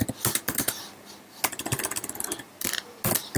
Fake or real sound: real